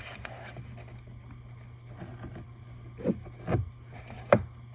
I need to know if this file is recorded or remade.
recorded